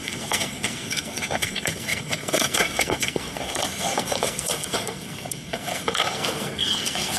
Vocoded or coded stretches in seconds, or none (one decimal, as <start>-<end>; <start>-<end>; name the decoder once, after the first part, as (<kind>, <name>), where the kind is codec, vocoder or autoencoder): 0.0-7.2 (codec, SNAC)